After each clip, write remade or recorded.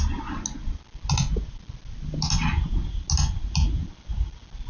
recorded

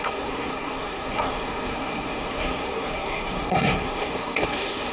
remade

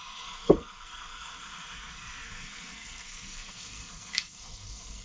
remade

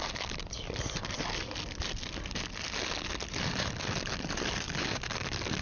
remade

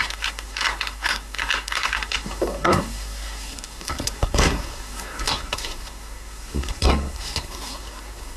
remade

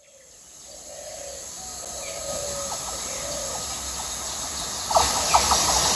recorded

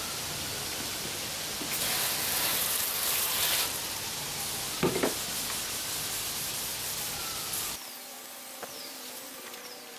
recorded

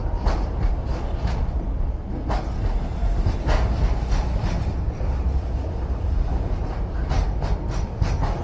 recorded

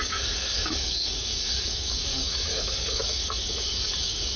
remade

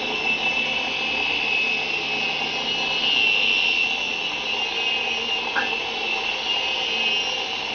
recorded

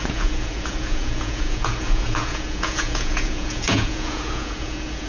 remade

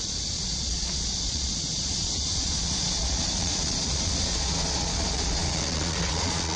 remade